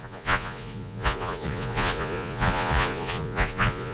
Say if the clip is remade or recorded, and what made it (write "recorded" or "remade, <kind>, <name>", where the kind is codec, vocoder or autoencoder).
remade, vocoder, Vocos